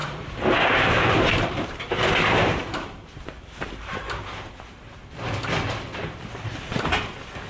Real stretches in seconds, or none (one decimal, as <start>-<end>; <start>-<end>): 4.5-7.5